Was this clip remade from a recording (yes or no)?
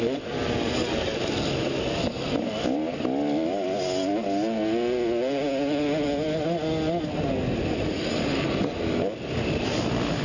no